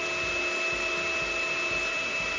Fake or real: real